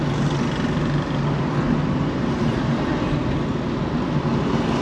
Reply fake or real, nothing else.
real